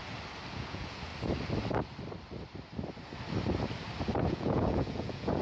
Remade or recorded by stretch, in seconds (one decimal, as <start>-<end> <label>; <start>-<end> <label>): 0.0-0.5 recorded; 0.5-1.1 remade; 1.1-4.3 recorded; 4.3-5.4 remade